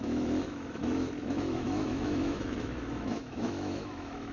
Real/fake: fake